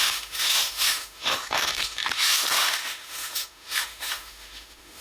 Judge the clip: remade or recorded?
remade